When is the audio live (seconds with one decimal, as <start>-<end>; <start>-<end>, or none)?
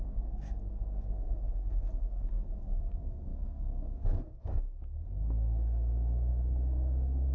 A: none